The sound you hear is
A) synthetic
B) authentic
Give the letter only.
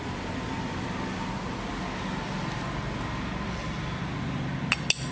B